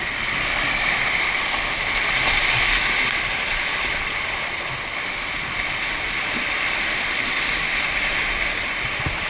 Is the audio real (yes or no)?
yes